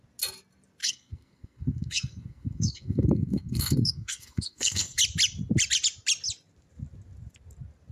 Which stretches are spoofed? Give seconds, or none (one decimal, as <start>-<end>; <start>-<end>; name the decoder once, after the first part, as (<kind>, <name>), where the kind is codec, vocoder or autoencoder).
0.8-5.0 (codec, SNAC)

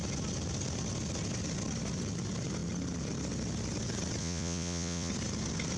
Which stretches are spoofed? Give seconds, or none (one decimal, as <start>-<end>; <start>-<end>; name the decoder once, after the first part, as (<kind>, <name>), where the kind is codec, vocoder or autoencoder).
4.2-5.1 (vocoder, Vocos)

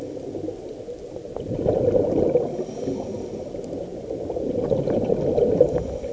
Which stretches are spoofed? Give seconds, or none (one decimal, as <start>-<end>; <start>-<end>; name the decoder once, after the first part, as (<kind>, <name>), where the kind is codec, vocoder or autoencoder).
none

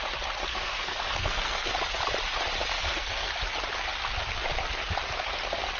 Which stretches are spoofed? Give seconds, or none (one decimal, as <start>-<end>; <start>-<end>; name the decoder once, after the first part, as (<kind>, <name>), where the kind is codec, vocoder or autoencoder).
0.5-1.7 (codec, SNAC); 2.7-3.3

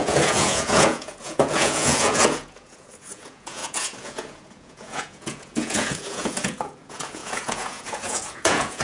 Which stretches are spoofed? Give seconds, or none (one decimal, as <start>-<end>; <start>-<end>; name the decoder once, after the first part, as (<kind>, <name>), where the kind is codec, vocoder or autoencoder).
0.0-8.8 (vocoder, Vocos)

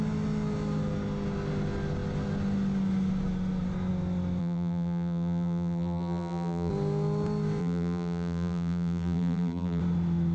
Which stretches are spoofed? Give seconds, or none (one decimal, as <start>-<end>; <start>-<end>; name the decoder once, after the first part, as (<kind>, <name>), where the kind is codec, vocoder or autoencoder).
4.4-6.7 (vocoder, BigVGAN v2); 7.6-9.8

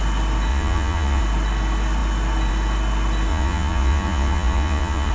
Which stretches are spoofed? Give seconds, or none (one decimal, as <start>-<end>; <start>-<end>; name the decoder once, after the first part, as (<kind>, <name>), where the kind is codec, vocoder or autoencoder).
0.5-1.2 (vocoder, Vocos); 3.3-5.1